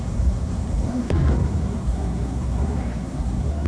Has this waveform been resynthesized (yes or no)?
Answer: yes